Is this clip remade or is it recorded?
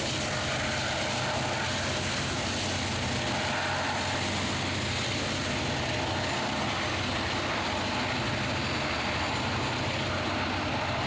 recorded